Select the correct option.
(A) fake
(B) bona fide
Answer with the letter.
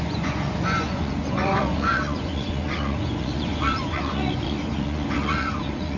A